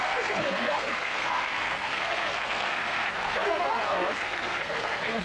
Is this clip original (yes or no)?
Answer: no